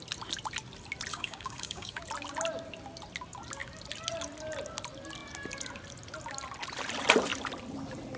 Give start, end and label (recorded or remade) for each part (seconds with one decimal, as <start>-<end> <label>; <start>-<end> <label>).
0.0-1.1 recorded; 1.1-2.0 remade; 2.0-8.2 recorded